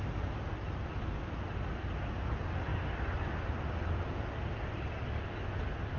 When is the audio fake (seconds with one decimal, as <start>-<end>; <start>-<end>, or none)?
none